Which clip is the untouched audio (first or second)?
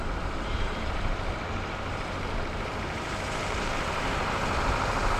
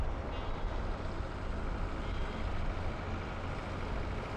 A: second